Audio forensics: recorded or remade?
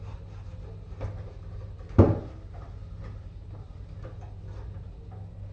recorded